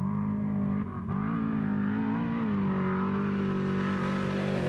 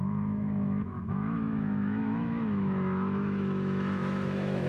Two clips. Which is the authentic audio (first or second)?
first